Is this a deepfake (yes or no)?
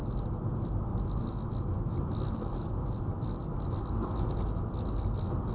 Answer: no